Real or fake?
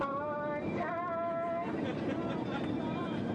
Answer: real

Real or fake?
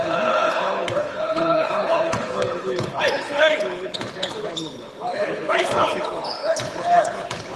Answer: fake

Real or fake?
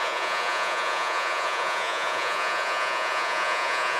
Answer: fake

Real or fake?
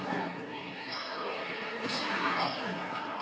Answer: fake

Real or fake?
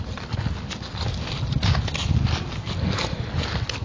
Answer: real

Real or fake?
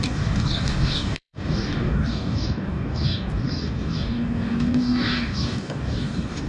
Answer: fake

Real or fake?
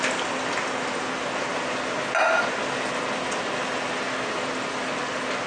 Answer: real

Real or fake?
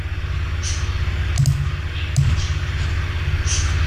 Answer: real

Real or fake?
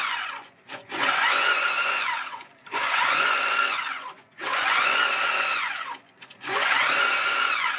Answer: fake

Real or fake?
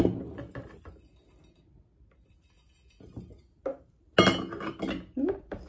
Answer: real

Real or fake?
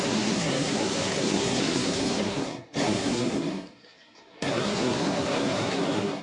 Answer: fake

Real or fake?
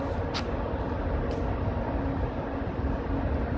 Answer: real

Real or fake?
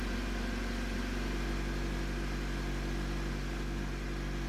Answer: real